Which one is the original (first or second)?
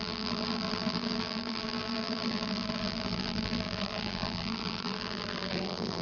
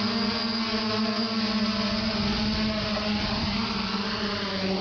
second